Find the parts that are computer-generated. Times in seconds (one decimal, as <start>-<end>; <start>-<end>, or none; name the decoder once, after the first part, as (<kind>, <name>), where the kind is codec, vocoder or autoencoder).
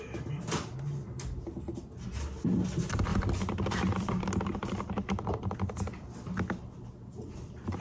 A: none